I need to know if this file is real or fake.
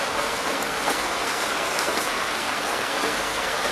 fake